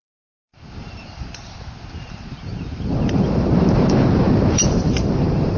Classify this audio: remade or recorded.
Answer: remade